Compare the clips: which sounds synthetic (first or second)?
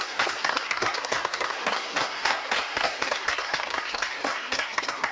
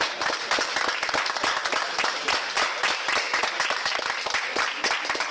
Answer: first